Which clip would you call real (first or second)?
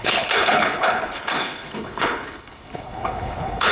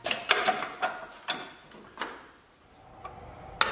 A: second